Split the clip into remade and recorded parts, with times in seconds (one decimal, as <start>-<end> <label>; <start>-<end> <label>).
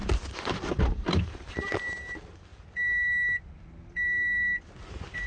0.0-5.3 recorded